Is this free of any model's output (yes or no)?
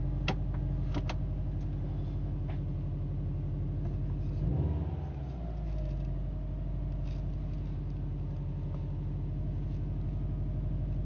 yes